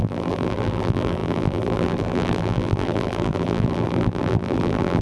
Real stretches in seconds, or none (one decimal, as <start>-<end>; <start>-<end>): none